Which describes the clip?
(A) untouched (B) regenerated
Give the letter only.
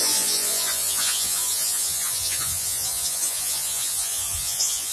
B